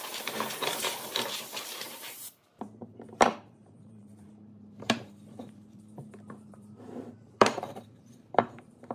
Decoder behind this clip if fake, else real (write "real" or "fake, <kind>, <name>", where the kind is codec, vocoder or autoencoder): fake, vocoder, BigVGAN v2